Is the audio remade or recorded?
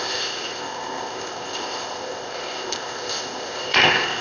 remade